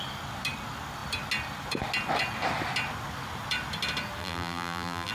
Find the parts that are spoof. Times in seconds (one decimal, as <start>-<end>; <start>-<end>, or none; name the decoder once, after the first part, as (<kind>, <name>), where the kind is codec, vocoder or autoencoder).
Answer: 4.2-5.1 (vocoder, BigVGAN v2)